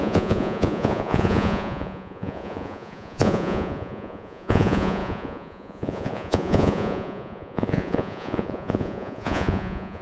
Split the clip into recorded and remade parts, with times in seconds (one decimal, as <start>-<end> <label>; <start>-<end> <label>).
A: 0.0-10.0 remade